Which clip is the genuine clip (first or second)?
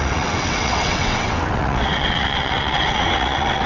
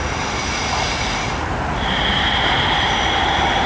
second